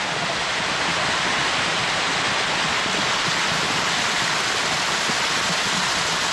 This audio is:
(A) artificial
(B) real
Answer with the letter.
B